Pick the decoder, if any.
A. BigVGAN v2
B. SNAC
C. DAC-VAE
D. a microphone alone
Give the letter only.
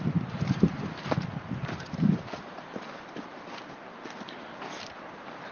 A